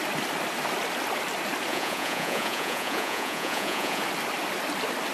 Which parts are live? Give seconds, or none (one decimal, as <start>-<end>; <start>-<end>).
0.0-1.7; 4.0-5.1